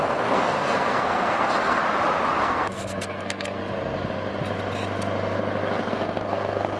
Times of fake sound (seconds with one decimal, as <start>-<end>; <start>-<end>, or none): 0.0-1.8; 2.4-3.6; 5.9-6.8